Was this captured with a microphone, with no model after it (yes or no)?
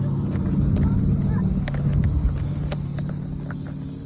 yes